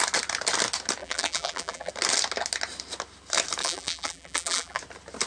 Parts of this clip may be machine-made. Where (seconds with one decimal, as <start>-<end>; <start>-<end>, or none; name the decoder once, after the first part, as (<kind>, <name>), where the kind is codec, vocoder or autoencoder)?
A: 1.0-1.9 (vocoder, BigVGAN v2); 3.6-4.8

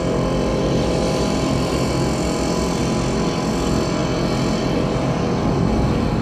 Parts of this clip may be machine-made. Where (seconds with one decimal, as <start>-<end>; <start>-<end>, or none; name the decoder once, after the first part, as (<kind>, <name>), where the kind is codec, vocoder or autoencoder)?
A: 0.5-1.9 (vocoder, BigVGAN v2)

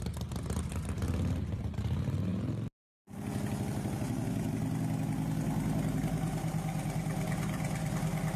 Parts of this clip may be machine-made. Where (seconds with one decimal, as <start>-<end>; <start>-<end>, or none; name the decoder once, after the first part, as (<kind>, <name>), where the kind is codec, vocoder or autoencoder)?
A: 1.0-1.6 (vocoder, BigVGAN v2)

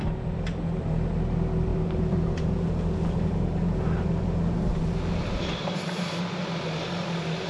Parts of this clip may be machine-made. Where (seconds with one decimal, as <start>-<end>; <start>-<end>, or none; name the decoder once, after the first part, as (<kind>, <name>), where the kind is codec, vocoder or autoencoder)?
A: 1.7-6.2 (vocoder, BigVGAN v2)

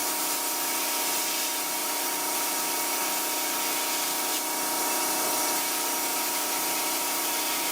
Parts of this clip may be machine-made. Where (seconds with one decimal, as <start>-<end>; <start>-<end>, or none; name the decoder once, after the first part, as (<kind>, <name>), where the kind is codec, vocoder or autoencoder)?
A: 1.8-2.5 (vocoder, BigVGAN v2); 4.3-5.4; 6.1-7.7

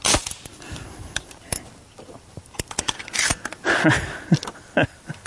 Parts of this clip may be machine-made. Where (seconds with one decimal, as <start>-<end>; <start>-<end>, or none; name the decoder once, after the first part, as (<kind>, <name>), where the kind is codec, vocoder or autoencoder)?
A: 2.8-3.3 (vocoder, BigVGAN v2); 4.5-5.3